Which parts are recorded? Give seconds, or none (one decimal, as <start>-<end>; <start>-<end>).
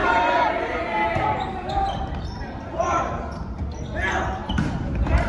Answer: 3.2-4.4